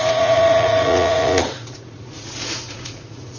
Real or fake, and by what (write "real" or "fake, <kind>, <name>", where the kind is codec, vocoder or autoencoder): fake, vocoder, Vocos